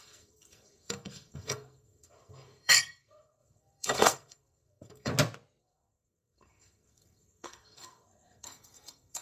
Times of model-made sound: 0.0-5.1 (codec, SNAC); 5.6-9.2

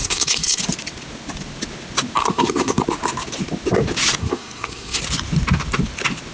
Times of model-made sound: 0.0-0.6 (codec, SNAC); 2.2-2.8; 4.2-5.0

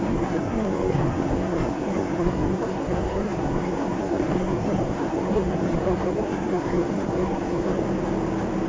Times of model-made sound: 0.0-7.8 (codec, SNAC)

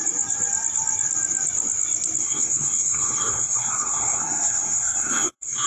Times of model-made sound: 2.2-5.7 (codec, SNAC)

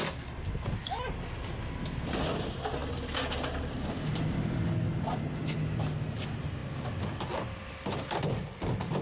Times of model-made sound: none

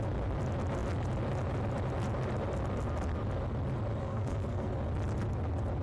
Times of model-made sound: 4.0-4.7 (codec, SNAC)

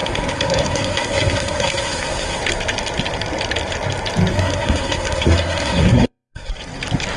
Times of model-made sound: 0.0-2.4 (codec, SNAC); 4.3-6.5